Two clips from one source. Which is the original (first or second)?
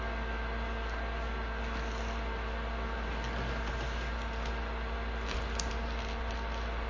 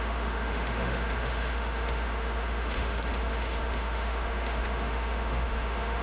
first